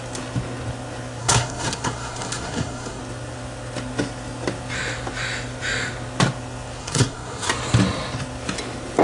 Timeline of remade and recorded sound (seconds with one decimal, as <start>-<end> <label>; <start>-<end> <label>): 0.0-1.2 recorded; 1.2-3.0 remade; 3.0-6.8 recorded; 6.8-7.5 remade; 7.5-9.0 recorded